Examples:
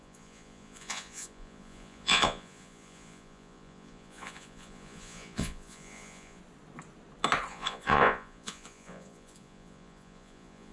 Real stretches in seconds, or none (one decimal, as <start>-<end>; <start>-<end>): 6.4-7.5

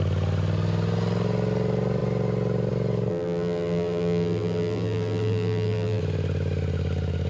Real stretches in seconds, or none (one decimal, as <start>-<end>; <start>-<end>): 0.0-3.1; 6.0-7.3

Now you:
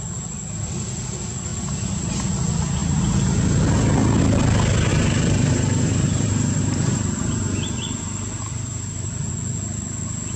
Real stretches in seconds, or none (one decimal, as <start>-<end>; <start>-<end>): 0.0-4.9; 9.3-10.4